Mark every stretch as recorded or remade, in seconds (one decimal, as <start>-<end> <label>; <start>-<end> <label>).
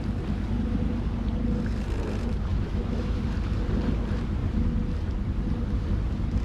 0.0-2.5 recorded; 2.5-3.2 remade; 3.2-6.4 recorded